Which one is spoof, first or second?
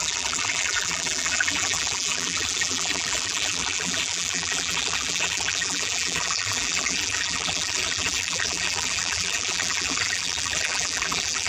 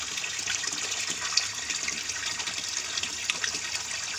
first